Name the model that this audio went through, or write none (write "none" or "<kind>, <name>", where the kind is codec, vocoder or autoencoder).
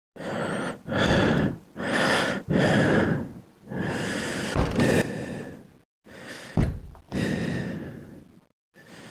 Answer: none